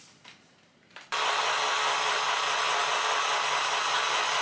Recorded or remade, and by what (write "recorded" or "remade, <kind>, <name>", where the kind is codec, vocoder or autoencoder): recorded